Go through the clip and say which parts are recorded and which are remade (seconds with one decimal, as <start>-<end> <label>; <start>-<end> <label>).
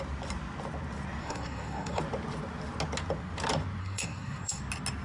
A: 0.0-1.2 recorded; 1.2-2.0 remade; 2.0-3.8 recorded; 3.8-4.6 remade; 4.6-5.0 recorded